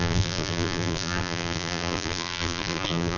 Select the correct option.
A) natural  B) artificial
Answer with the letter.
B